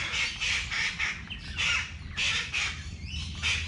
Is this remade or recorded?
recorded